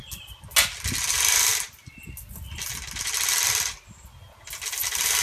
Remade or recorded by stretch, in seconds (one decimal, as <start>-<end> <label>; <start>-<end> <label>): 0.0-5.2 recorded